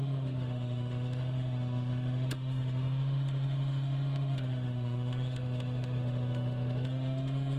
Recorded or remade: remade